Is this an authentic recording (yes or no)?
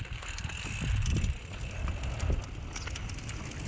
yes